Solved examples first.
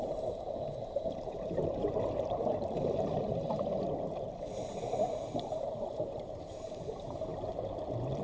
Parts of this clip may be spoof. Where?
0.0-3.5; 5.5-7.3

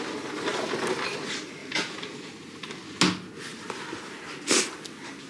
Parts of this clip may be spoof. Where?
1.6-2.4; 3.5-4.6

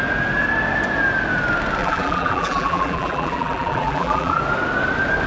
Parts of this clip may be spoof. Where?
1.8-4.4

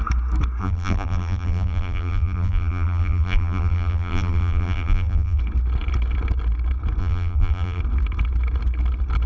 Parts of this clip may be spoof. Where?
0.6-5.4; 7.0-7.8